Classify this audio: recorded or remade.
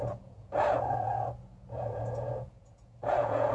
remade